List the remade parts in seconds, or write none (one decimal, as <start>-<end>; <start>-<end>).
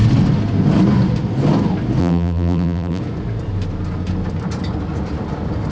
2.0-3.0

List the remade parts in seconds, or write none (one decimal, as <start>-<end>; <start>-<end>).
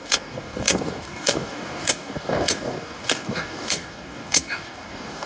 0.0-5.3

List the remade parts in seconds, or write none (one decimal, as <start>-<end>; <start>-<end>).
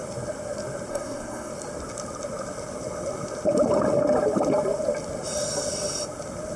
0.9-1.5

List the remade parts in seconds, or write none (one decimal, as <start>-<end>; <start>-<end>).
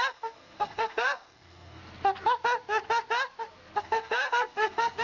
0.0-1.8; 3.8-5.0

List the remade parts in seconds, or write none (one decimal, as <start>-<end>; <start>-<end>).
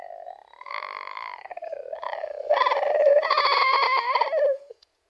0.0-0.4; 3.1-3.8; 4.4-5.1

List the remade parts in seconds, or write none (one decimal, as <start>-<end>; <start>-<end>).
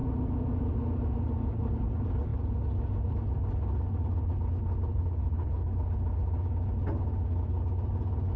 4.9-5.7